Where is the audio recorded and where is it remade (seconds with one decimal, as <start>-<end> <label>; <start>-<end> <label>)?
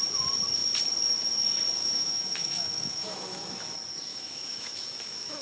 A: 0.0-1.8 recorded; 1.8-3.5 remade; 3.5-4.1 recorded; 4.1-5.4 remade